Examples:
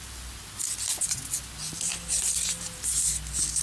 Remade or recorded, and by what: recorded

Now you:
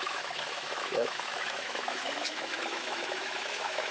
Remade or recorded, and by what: remade, autoencoder, DAC-VAE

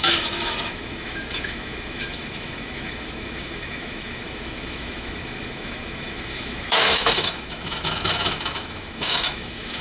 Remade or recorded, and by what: remade, autoencoder, DAC-VAE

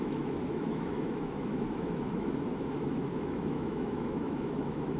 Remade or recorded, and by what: remade, autoencoder, DAC-VAE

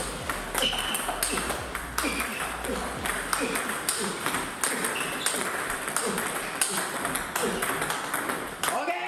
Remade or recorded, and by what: recorded